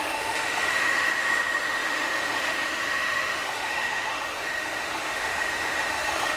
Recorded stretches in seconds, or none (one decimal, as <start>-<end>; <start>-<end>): none